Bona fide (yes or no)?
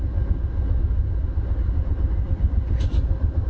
yes